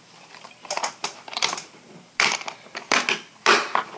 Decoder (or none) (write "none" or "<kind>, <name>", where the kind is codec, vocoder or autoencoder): none